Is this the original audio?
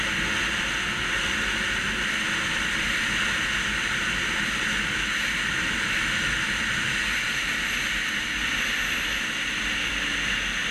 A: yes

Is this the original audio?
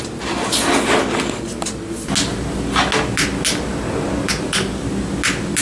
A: yes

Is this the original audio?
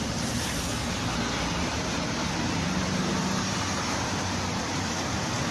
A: yes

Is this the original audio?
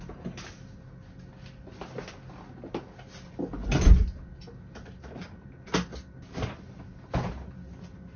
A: yes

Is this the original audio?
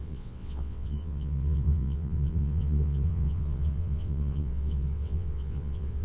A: no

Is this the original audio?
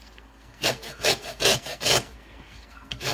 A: no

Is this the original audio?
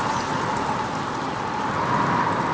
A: yes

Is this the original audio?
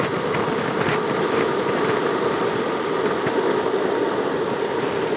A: yes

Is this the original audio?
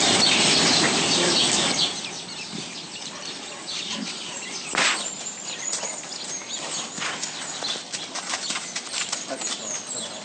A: yes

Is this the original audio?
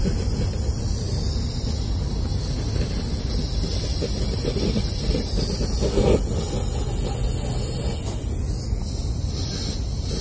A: yes